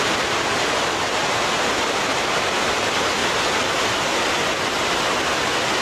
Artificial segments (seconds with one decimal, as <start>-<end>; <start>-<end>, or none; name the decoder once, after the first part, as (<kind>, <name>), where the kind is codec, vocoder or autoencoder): 0.0-1.2 (vocoder, BigVGAN v2); 2.1-3.2